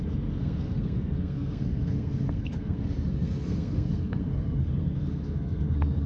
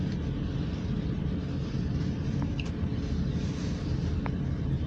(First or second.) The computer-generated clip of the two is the first